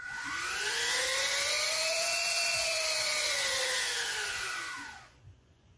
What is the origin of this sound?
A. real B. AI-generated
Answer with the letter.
B